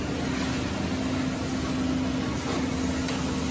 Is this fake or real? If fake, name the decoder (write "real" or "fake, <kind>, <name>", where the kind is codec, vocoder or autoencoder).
real